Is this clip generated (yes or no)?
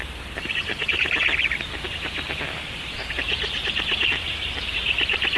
yes